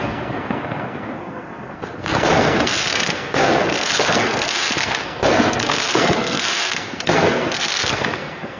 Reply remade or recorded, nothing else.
remade